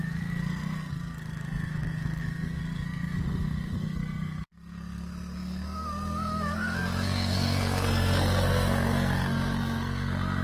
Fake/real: fake